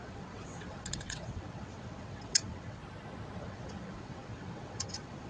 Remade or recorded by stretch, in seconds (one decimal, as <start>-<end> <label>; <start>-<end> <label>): 0.0-2.8 remade; 2.8-3.4 recorded; 3.4-5.3 remade